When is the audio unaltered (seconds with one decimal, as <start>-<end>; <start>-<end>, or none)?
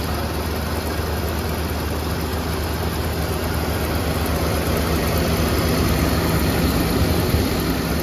0.0-8.0